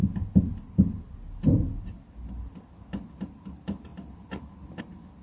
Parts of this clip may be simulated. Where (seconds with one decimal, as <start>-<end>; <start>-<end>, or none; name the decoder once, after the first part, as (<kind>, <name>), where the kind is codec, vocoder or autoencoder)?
none